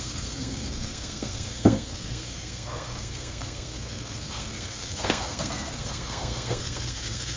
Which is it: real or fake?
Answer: fake